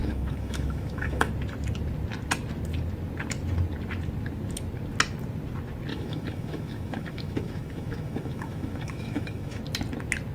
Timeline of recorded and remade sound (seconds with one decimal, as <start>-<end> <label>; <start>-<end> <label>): 0.0-1.3 remade; 1.3-5.9 recorded; 5.9-9.6 remade; 9.6-10.3 recorded